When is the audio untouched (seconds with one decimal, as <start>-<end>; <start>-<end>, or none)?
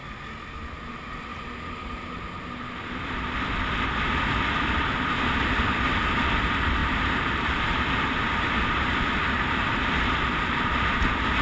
0.0-6.8; 11.0-11.4